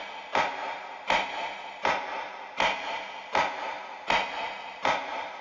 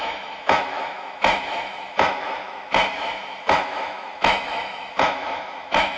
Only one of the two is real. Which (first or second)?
first